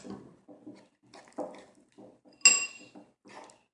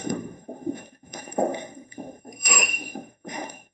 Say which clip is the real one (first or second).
first